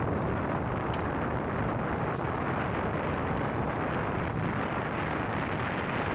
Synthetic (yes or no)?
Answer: no